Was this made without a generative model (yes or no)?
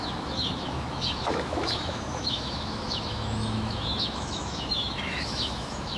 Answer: no